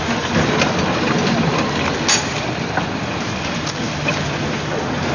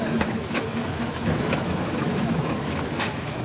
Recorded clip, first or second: first